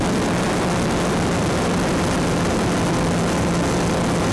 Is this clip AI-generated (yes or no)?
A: no